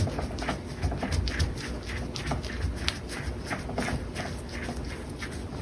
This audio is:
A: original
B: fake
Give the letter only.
A